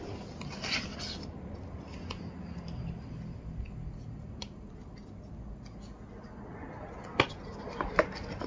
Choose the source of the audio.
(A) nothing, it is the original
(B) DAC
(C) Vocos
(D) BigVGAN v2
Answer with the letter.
A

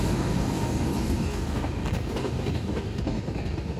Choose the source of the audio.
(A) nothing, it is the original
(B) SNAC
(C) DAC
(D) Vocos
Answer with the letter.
C